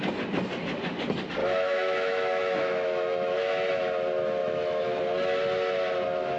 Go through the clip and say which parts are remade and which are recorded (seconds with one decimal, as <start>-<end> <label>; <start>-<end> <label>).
0.0-1.4 recorded; 1.4-3.7 remade; 3.7-4.4 recorded; 4.4-5.0 remade; 5.0-6.4 recorded